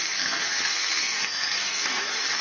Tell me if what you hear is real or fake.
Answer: fake